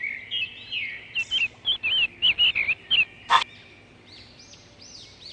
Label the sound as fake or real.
real